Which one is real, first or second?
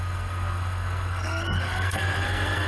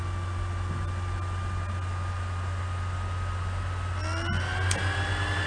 second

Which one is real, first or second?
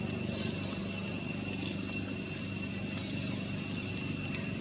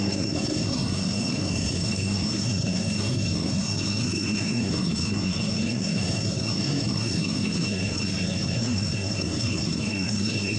first